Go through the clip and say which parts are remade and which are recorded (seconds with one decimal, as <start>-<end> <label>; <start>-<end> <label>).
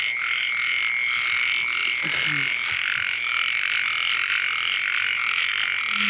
0.0-6.1 recorded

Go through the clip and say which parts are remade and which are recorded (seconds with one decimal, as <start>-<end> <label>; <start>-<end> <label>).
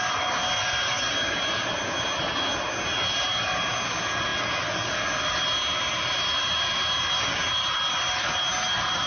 0.0-9.1 recorded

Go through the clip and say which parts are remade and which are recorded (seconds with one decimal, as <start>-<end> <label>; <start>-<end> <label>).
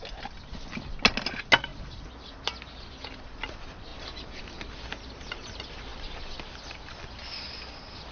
0.0-8.1 recorded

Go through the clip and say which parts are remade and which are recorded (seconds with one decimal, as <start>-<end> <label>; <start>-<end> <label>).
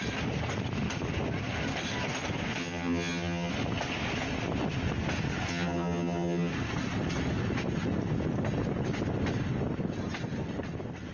0.0-2.6 recorded; 2.6-3.5 remade; 3.5-5.5 recorded; 5.5-6.5 remade; 6.5-11.1 recorded